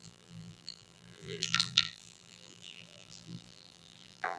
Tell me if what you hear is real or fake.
fake